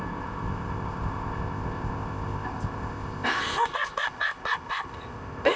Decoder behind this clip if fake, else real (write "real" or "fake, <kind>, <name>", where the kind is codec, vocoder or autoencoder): fake, codec, ZipCodec